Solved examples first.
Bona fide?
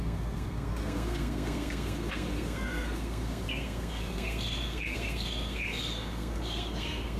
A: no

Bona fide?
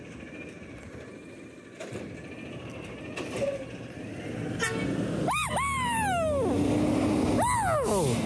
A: yes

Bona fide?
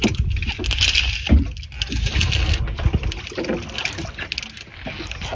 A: yes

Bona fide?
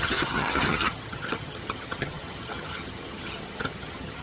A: no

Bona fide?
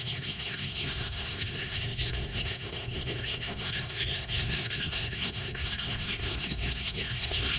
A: no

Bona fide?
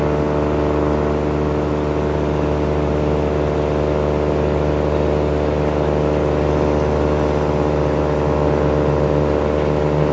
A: yes